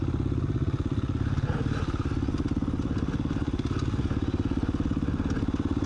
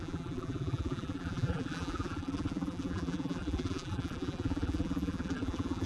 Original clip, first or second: first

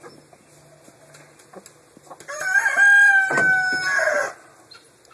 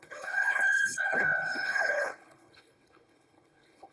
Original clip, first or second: first